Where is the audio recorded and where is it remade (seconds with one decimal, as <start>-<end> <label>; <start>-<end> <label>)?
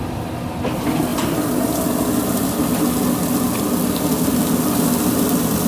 0.0-5.7 recorded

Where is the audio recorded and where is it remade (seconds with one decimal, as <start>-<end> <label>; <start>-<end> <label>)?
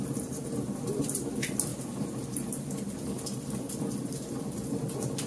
0.0-5.3 recorded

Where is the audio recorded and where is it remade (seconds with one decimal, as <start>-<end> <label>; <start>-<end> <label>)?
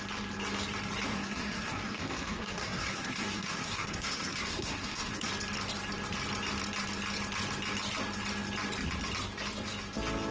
0.0-1.1 recorded; 1.1-5.3 remade; 5.3-10.3 recorded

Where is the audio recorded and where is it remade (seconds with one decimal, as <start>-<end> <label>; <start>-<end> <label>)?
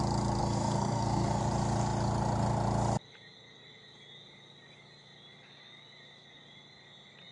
0.0-0.4 recorded; 0.4-1.4 remade; 1.4-7.3 recorded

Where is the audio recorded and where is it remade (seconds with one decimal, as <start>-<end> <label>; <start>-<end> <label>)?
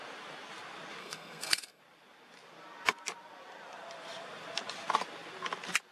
0.0-1.0 recorded; 1.0-1.8 remade; 1.8-5.9 recorded